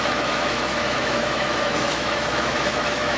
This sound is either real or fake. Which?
fake